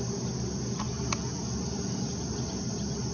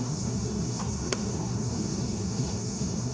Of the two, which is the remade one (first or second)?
second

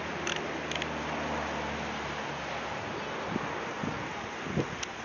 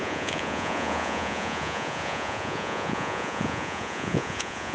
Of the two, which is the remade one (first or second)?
second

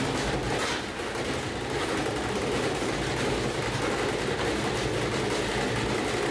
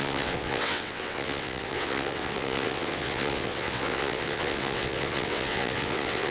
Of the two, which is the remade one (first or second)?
second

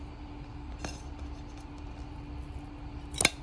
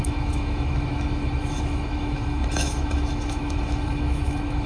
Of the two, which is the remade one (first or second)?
second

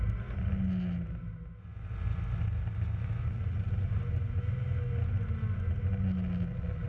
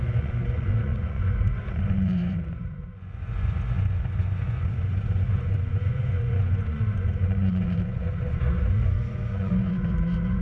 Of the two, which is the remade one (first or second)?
second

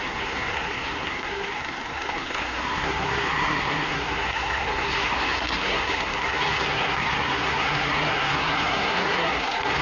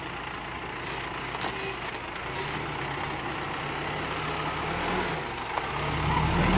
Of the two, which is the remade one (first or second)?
first